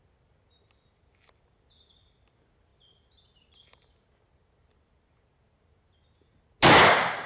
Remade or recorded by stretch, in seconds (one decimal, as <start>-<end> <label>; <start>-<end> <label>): 0.0-7.3 recorded